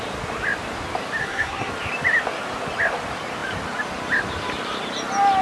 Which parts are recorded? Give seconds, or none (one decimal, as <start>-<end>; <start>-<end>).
0.0-1.2; 1.7-5.4